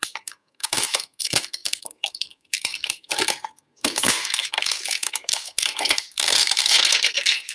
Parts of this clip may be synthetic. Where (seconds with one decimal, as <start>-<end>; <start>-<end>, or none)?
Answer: 0.0-7.5